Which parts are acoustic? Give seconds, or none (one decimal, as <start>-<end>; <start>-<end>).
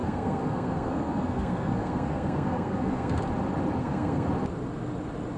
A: 3.2-3.8; 4.3-5.4